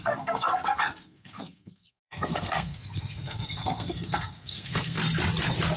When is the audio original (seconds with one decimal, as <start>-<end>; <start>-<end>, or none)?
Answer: 5.0-5.8